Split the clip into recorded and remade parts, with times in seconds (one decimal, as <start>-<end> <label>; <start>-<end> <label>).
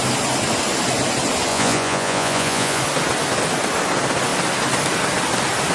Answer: 0.0-1.5 recorded; 1.5-2.8 remade; 2.8-5.7 recorded